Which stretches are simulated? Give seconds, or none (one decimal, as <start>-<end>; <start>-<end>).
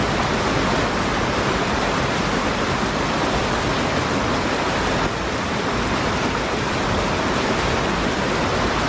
none